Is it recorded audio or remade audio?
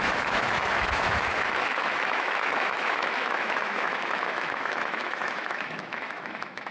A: remade